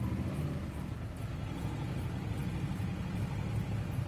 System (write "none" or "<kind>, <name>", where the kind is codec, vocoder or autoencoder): none